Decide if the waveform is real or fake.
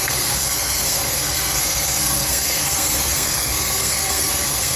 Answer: fake